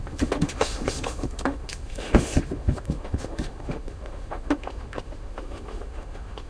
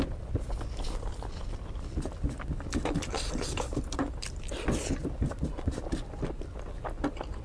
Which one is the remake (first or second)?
first